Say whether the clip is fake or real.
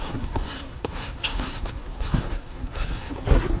fake